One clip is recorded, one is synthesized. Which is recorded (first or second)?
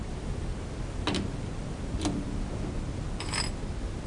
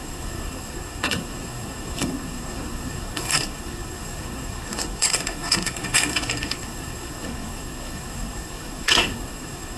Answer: first